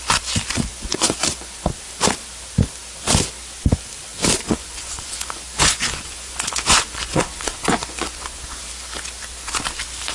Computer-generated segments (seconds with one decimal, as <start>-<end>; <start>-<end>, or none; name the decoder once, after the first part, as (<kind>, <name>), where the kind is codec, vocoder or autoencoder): 0.7-1.8 (vocoder, Vocos); 4.1-8.7